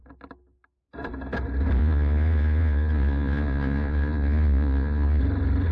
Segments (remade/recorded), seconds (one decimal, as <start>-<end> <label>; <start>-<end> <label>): 0.0-1.8 recorded; 1.8-5.2 remade; 5.2-5.7 recorded